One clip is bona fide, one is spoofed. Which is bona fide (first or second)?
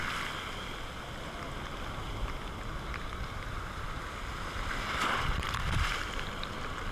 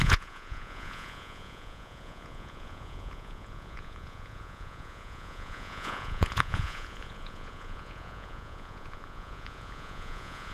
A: first